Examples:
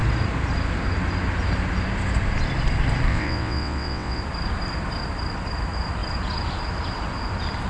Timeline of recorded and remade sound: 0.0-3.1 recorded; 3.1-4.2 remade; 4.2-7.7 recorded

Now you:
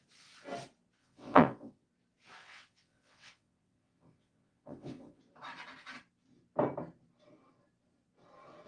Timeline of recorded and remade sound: 0.0-1.0 recorded; 1.0-1.9 remade; 1.9-2.4 recorded; 2.4-5.2 remade; 5.2-8.7 recorded

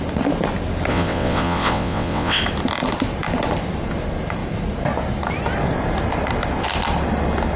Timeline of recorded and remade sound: 0.0-0.9 recorded; 0.9-2.4 remade; 2.4-7.6 recorded